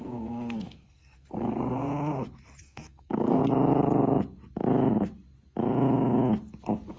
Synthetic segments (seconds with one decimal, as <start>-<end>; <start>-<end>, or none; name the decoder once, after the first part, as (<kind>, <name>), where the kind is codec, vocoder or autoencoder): 0.0-1.9 (codec, SNAC); 2.6-3.4